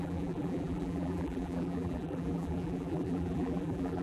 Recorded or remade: remade